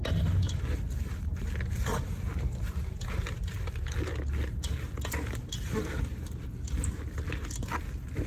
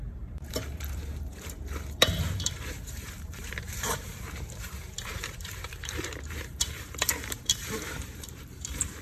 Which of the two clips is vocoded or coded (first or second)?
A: second